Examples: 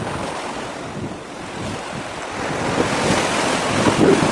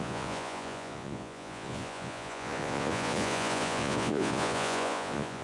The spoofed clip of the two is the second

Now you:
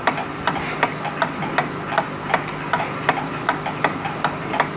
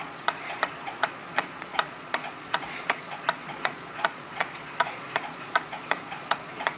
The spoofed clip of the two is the second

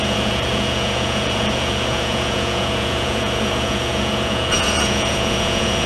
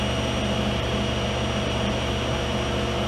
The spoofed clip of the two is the first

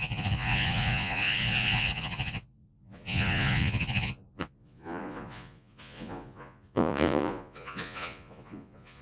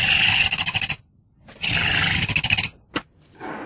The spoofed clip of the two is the first